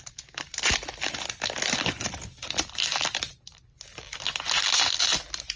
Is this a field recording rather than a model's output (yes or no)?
yes